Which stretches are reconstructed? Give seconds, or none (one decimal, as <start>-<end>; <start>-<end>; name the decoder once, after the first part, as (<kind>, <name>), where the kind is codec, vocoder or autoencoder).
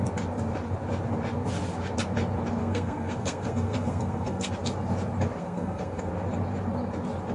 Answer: 2.6-4.5 (codec, SNAC); 5.4-6.1